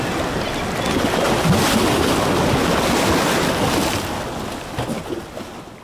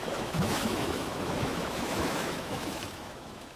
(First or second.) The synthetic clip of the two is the second